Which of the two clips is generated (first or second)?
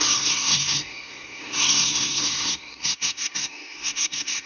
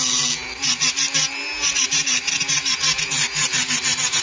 first